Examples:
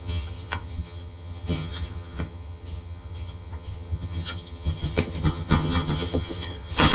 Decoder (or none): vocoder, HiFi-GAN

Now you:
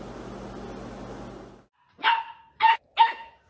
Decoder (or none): none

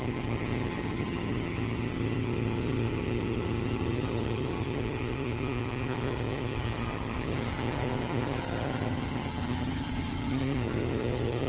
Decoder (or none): vocoder, HiFi-GAN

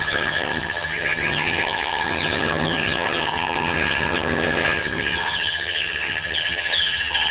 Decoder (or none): vocoder, HiFi-GAN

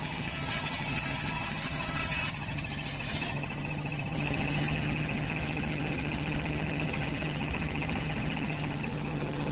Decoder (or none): vocoder, HiFi-GAN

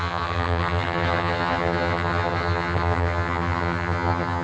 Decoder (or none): vocoder, HiFi-GAN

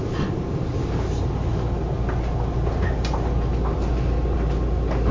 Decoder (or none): none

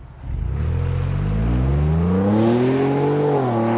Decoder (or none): none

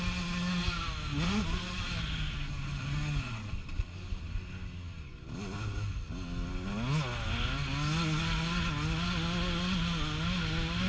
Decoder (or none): none